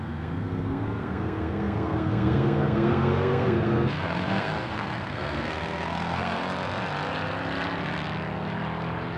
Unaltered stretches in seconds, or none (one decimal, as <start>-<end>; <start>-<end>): 6.4-9.2